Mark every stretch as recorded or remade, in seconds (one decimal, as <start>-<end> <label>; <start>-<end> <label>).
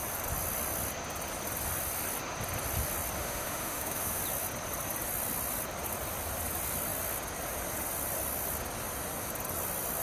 0.0-3.2 recorded; 3.2-4.2 remade; 4.2-10.0 recorded